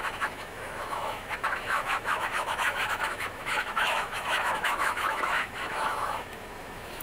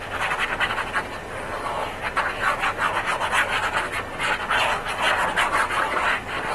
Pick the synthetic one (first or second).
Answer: first